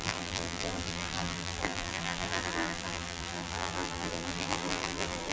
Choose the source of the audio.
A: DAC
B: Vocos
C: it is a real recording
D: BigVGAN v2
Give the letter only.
D